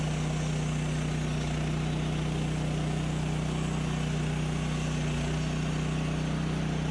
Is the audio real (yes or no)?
yes